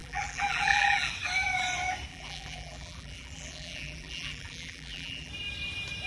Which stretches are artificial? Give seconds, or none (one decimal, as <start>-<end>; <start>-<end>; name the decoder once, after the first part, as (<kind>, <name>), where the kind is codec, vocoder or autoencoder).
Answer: 0.0-1.1 (vocoder, BigVGAN v2); 2.1-5.3